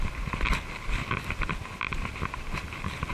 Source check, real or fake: real